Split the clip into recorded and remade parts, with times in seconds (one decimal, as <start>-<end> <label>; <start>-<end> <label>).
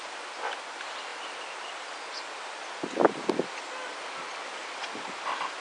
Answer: 0.0-5.6 recorded